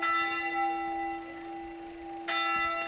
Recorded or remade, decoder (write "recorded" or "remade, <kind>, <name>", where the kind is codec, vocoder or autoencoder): recorded